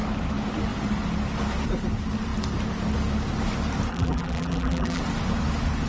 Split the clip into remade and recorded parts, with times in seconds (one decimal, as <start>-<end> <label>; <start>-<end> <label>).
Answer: 0.0-3.9 recorded; 3.9-5.0 remade; 5.0-5.9 recorded

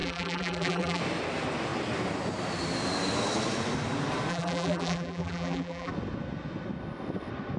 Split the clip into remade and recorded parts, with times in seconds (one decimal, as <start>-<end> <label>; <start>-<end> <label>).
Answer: 0.0-1.0 remade; 1.0-4.3 recorded; 4.3-5.9 remade; 5.9-7.6 recorded

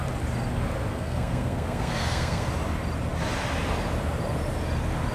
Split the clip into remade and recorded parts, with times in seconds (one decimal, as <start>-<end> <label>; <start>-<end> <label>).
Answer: 0.0-0.9 recorded; 0.9-2.5 remade; 2.5-5.1 recorded